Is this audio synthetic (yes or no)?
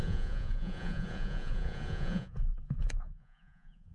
yes